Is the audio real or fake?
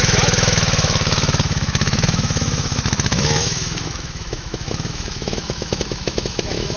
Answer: fake